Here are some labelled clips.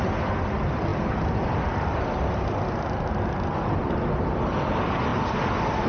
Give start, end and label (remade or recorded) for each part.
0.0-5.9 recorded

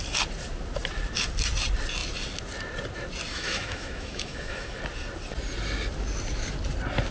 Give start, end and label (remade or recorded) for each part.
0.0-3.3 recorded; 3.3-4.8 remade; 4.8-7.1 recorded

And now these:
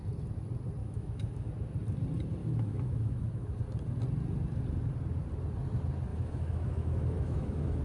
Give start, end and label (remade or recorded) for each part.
0.0-0.8 recorded; 0.8-1.5 remade; 1.5-2.4 recorded; 2.4-3.5 remade; 3.5-6.1 recorded; 6.1-7.8 remade

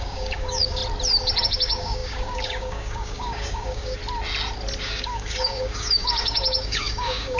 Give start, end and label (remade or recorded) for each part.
0.0-0.8 remade; 0.8-1.4 recorded; 1.4-4.0 remade; 4.0-4.8 recorded; 4.8-7.4 remade

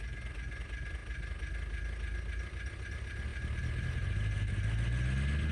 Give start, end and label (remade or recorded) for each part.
0.0-5.5 recorded

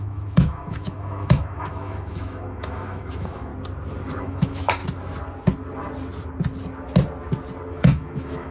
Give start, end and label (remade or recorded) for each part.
0.0-3.5 remade; 3.5-4.2 recorded; 4.2-4.8 remade; 4.8-7.7 recorded; 7.7-8.5 remade